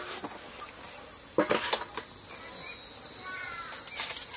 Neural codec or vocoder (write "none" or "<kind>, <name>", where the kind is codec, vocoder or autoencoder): none